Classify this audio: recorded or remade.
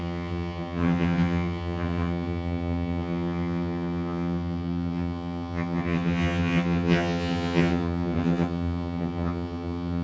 remade